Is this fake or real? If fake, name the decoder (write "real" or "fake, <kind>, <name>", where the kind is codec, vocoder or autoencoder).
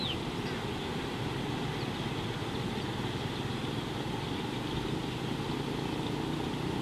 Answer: real